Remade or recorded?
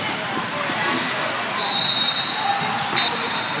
recorded